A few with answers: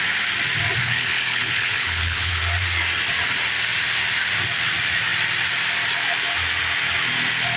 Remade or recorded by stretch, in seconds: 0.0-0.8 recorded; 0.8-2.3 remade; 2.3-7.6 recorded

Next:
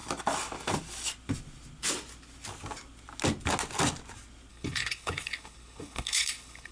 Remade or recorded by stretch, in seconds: 0.0-4.5 recorded; 4.5-6.7 remade

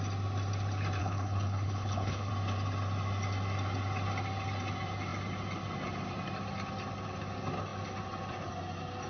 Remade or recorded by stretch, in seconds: 0.0-1.0 recorded; 1.0-2.3 remade; 2.3-9.1 recorded

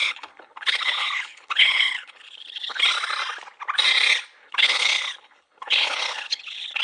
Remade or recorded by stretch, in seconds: 0.0-2.8 remade; 2.8-4.4 recorded; 4.4-6.8 remade

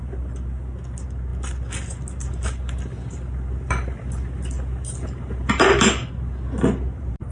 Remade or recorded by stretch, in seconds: 0.0-7.3 recorded